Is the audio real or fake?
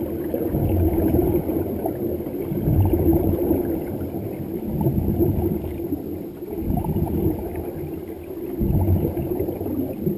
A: real